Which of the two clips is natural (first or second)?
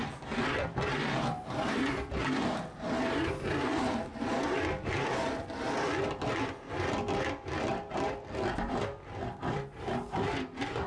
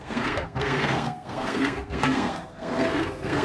first